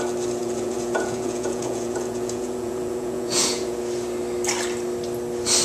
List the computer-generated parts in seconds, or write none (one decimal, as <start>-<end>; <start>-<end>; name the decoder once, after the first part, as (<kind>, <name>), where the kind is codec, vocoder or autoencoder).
0.4-3.8 (vocoder, Vocos)